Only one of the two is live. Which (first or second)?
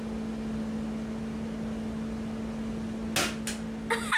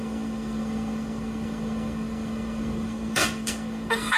first